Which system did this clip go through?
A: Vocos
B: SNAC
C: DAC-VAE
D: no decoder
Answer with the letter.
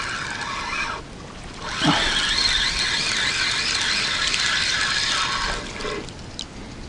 D